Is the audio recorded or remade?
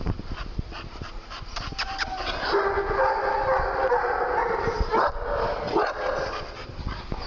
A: recorded